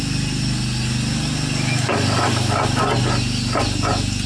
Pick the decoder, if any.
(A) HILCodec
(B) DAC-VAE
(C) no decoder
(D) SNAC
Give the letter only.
C